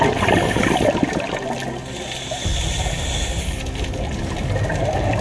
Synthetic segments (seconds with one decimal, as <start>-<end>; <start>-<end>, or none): none